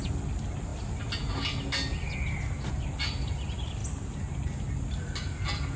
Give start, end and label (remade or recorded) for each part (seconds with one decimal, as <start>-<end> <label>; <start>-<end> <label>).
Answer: 0.0-5.8 recorded